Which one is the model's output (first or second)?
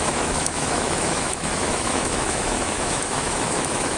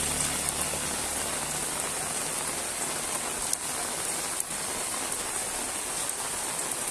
first